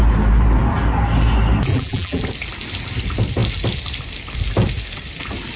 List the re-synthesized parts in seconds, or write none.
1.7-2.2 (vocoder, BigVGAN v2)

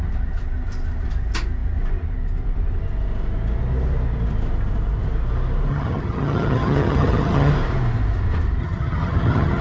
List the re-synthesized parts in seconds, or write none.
5.7-7.5 (vocoder, HiFi-GAN); 8.6-9.6

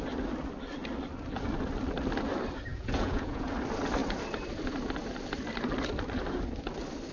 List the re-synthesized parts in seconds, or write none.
2.7-3.5 (vocoder, Vocos)

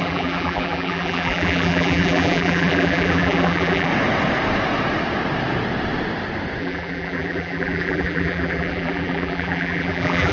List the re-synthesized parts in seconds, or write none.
0.0-3.9 (vocoder, BigVGAN v2); 6.6-10.3

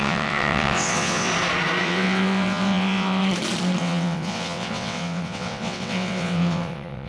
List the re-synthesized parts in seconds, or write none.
0.0-1.3 (vocoder, WaveNeXt); 1.8-3.2; 3.8-7.1

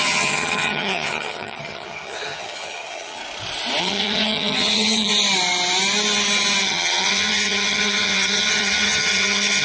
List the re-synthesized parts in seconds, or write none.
0.0-3.2 (vocoder, HiFi-GAN); 3.8-5.1; 6.6-9.6

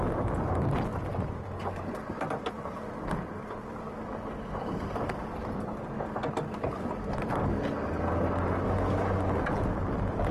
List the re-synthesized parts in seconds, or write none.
0.9-3.8 (vocoder, BigVGAN v2)

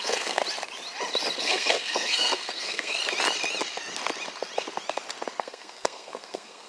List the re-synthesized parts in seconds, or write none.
0.0-0.4 (codec, SNAC); 1.4-3.0; 5.4-6.7